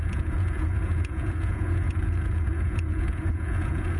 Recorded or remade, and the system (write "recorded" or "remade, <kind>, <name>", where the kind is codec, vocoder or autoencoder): remade, vocoder, Vocos